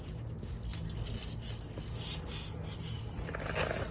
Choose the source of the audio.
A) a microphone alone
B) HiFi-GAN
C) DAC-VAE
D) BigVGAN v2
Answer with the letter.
A